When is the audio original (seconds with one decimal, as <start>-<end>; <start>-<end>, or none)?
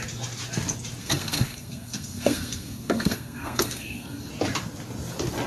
0.0-1.0; 4.3-5.5